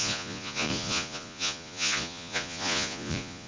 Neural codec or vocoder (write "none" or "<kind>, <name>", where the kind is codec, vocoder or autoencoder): vocoder, Vocos